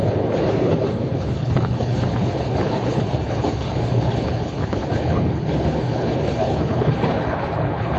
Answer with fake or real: fake